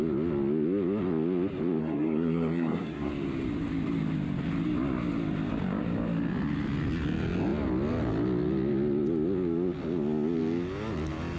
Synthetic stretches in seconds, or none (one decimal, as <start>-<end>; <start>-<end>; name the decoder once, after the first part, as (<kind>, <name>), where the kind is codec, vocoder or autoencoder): 1.8-3.1 (codec, SNAC)